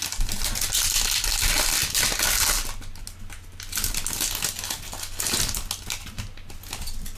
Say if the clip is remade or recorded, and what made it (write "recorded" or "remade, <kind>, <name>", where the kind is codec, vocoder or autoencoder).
recorded